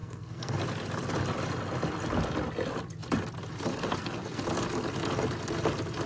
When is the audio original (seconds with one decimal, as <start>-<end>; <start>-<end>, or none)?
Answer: 0.6-3.7; 4.4-6.1